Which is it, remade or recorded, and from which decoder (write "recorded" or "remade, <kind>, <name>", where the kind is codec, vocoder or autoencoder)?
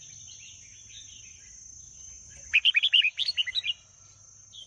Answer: recorded